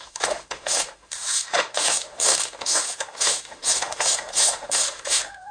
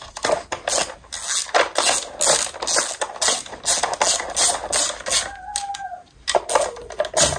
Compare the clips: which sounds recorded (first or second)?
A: second